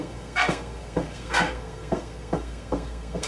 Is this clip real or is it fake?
fake